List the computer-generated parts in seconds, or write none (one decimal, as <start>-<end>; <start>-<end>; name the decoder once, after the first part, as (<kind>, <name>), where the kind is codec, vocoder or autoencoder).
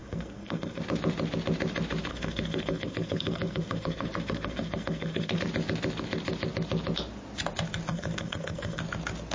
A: 0.0-0.8 (codec, SNAC); 2.1-5.4; 7.9-8.8